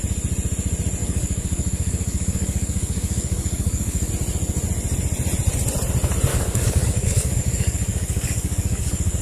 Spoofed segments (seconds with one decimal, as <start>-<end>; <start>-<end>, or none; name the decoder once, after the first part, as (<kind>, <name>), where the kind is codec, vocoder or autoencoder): 1.0-4.1 (codec, DAC); 6.3-9.2